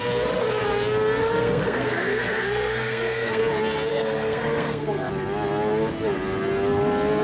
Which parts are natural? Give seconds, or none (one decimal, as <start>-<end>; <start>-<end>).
0.0-1.2; 3.4-3.9; 5.1-7.2